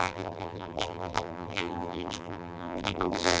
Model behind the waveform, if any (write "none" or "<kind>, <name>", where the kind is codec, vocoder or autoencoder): vocoder, BigVGAN v2